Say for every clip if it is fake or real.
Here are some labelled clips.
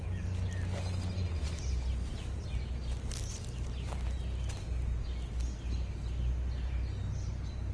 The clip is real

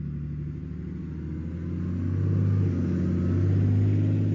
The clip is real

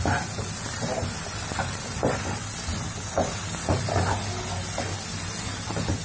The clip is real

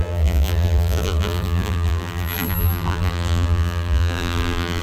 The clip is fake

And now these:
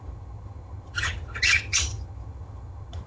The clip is fake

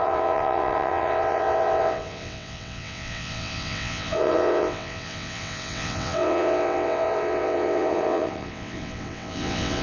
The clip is fake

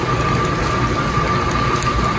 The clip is real